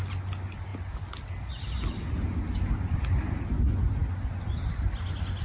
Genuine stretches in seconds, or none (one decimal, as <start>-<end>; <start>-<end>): 0.0-5.4